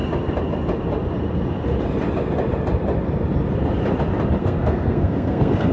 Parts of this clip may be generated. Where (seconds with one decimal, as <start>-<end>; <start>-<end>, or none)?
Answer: 4.4-5.7